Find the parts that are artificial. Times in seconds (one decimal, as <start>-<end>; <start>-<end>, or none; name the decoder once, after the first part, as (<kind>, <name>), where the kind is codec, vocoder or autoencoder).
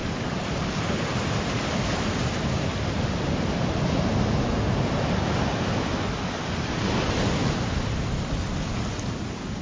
0.0-1.7 (vocoder, BigVGAN v2); 4.1-4.6